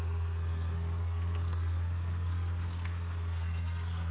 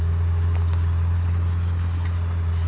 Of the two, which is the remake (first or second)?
first